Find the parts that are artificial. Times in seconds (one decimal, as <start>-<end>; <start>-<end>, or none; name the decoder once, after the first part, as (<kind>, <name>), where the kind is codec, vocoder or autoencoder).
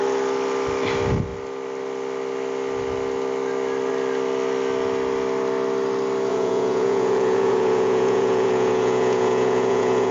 6.3-10.1 (vocoder, Vocos)